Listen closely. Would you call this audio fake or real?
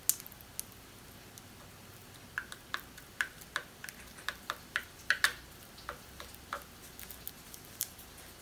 real